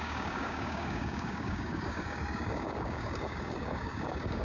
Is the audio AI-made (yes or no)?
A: yes